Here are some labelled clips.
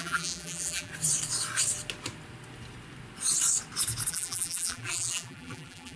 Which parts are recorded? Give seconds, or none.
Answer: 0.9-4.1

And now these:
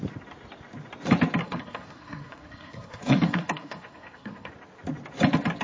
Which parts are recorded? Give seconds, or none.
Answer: 0.0-1.4; 4.5-5.6

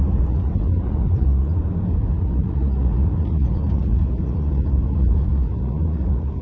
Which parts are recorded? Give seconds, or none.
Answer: 1.6-2.1